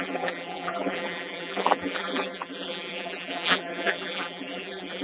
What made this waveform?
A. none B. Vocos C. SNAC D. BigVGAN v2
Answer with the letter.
D